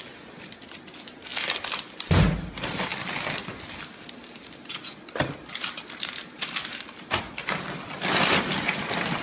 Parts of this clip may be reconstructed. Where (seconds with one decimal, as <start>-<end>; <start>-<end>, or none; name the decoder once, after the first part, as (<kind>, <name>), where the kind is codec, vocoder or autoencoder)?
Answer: none